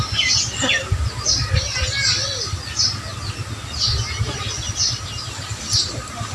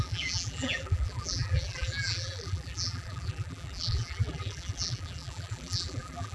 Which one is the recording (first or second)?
first